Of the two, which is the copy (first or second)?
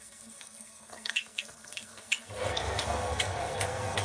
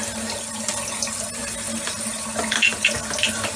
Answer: first